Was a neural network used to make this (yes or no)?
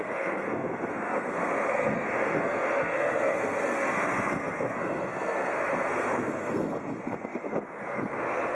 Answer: yes